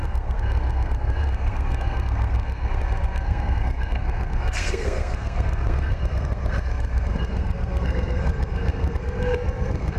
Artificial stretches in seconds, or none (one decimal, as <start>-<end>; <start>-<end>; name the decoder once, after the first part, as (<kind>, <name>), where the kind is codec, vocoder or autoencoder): 0.0-10.0 (codec, SNAC)